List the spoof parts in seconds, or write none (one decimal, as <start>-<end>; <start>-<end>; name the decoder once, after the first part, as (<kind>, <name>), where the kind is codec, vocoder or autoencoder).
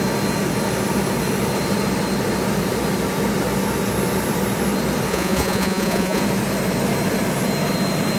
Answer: 5.1-6.2 (vocoder, Vocos)